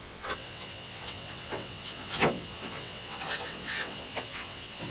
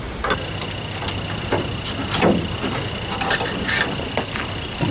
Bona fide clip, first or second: second